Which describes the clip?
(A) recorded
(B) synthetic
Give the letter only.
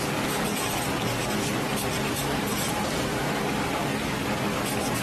A